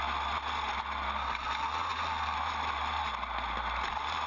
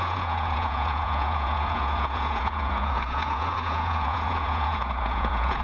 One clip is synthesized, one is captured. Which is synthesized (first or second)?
second